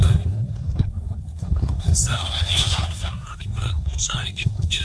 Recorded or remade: remade